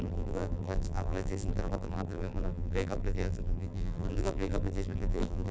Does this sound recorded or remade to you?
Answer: remade